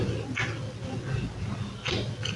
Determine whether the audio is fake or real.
real